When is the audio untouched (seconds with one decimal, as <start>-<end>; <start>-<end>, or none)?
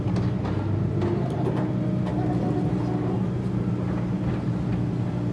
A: 0.0-5.3